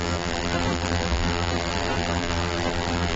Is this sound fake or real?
fake